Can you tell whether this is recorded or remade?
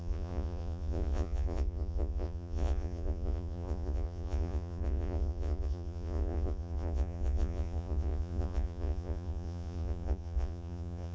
remade